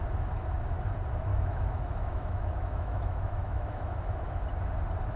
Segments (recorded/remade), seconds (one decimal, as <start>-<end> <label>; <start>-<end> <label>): 0.0-1.3 recorded; 1.3-4.4 remade; 4.4-5.2 recorded